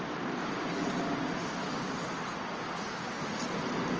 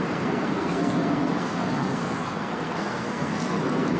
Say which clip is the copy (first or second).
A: second